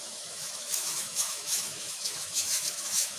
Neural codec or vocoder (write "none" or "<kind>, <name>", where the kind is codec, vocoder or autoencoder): autoencoder, DAC-VAE